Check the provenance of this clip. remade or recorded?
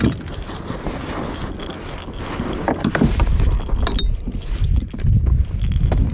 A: recorded